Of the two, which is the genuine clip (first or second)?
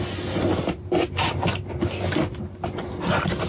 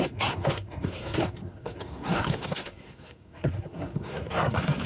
first